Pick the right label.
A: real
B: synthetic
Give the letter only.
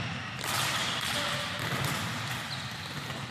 A